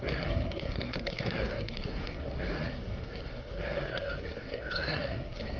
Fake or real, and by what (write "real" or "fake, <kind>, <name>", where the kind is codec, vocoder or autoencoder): fake, codec, SNAC